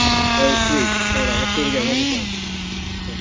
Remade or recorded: recorded